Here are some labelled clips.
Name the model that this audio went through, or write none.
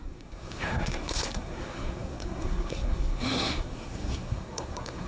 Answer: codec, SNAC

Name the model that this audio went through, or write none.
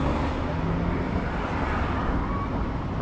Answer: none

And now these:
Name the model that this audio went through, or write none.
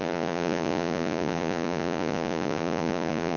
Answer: vocoder, Vocos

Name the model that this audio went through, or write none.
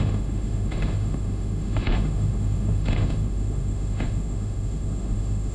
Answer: autoencoder, DAC-VAE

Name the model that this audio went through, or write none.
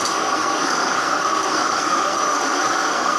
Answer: codec, SNAC